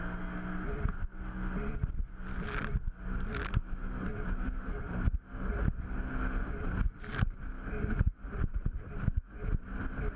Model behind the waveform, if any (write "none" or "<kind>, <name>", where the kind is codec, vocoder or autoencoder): none